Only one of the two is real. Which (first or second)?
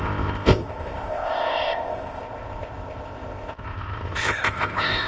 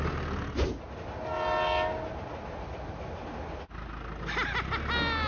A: second